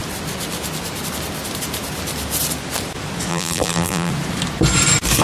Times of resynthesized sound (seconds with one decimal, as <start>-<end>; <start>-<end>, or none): 3.3-4.1